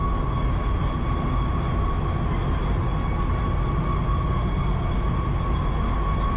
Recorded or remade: recorded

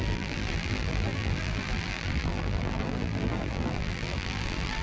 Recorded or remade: remade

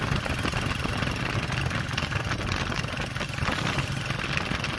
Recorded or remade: recorded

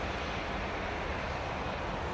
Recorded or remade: recorded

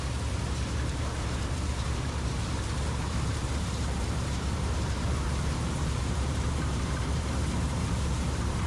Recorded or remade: remade